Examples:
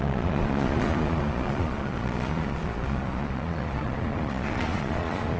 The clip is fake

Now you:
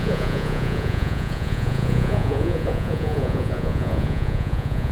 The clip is fake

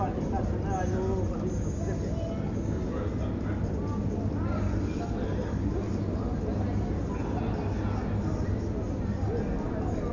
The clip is real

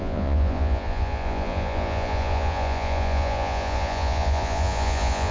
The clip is fake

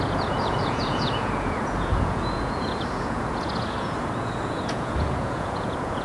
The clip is fake